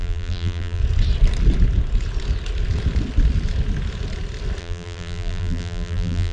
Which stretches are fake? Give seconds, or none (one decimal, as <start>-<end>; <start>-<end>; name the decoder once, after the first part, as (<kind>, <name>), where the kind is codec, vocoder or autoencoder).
0.0-0.8 (vocoder, BigVGAN v2); 4.6-6.3